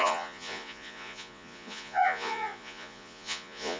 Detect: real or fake fake